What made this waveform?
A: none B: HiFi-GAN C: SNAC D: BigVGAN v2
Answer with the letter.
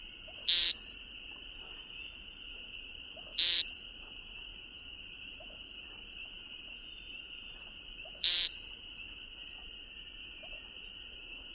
D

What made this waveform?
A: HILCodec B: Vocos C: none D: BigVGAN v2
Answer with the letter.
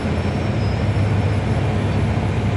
C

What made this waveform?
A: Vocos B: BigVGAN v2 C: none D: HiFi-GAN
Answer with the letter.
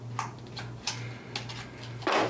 C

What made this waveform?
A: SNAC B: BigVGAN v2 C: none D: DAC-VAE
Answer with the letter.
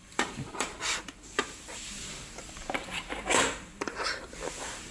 B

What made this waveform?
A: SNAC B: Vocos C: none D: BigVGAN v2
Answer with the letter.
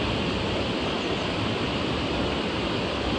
C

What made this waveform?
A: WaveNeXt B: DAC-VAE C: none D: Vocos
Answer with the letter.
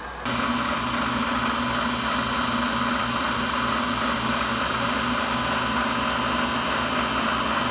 C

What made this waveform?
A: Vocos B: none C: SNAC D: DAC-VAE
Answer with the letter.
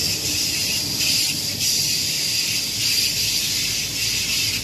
B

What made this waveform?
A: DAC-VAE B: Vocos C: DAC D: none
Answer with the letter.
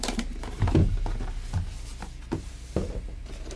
D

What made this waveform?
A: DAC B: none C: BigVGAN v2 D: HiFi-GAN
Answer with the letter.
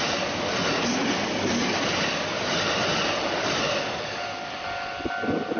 B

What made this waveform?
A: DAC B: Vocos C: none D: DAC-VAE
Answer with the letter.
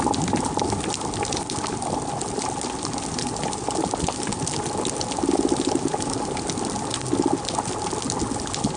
C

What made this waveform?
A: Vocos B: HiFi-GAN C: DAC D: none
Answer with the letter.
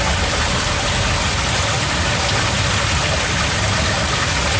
D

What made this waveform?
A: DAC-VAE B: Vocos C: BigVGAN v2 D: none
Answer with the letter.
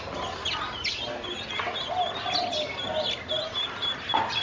D